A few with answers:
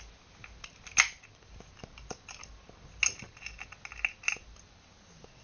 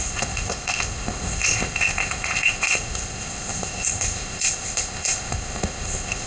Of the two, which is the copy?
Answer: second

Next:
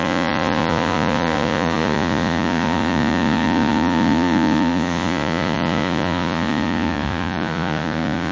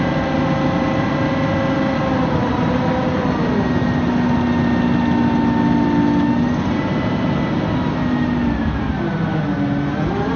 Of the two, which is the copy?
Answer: first